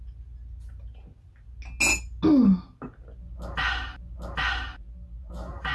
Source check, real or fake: real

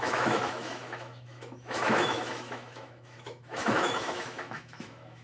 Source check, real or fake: fake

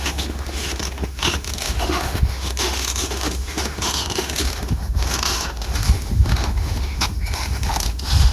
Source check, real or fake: fake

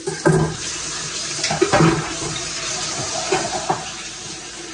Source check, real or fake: real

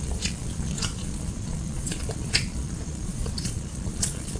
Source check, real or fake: fake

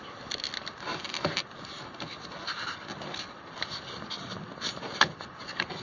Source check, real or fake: real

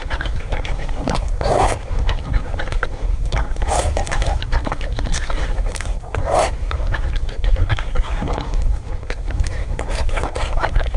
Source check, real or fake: fake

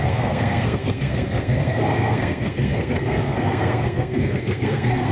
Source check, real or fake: fake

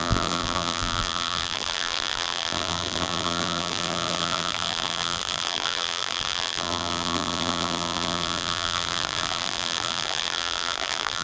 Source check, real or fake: fake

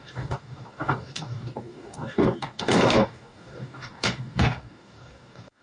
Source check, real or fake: fake